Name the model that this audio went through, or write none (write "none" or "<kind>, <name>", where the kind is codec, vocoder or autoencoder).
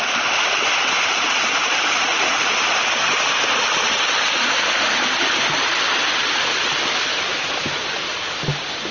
none